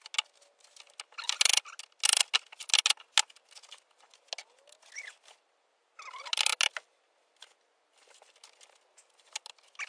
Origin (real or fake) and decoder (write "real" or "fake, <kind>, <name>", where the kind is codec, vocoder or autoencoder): real